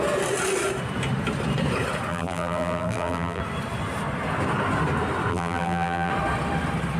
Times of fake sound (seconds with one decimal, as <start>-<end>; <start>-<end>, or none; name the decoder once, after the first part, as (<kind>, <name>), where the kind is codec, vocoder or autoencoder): 2.1-3.4 (vocoder, BigVGAN v2); 5.3-6.1